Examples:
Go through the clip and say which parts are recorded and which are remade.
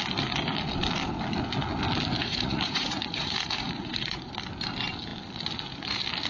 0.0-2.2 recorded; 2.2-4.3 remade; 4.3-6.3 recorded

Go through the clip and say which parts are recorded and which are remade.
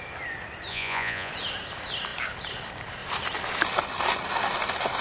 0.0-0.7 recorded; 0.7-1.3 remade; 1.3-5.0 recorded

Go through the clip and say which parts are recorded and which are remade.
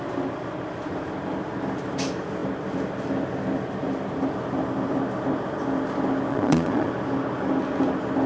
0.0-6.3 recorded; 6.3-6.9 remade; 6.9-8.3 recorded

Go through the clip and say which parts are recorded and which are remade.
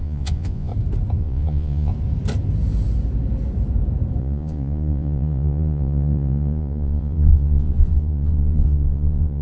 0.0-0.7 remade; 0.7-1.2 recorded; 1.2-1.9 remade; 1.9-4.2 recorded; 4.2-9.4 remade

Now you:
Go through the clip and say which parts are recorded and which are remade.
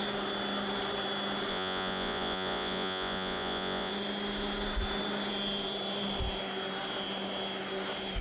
0.0-1.5 recorded; 1.5-3.9 remade; 3.9-8.2 recorded